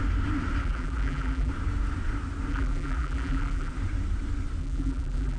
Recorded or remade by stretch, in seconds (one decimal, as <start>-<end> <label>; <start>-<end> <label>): 0.0-0.6 recorded; 0.6-1.5 remade; 1.5-2.5 recorded; 2.5-3.7 remade; 3.7-4.6 recorded; 4.6-5.4 remade

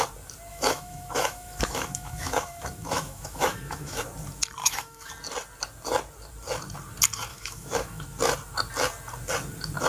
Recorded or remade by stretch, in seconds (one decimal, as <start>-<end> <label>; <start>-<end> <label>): 0.0-0.5 recorded; 0.5-4.0 remade; 4.0-4.6 recorded; 4.6-5.1 remade; 5.1-7.3 recorded; 7.3-8.0 remade; 8.0-9.9 recorded

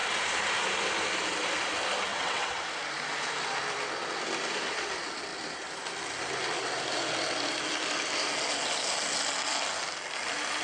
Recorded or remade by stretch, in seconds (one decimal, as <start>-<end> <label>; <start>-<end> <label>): 0.0-2.1 recorded; 2.1-2.6 remade; 2.6-10.6 recorded

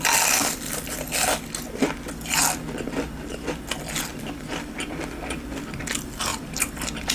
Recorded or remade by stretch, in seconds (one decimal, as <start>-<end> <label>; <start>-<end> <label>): 0.0-4.1 recorded; 4.1-5.0 remade; 5.0-6.3 recorded; 6.3-7.1 remade

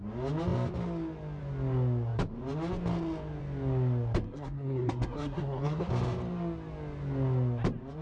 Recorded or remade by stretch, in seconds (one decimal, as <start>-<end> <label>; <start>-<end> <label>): 0.0-4.2 recorded; 4.2-5.9 remade; 5.9-8.0 recorded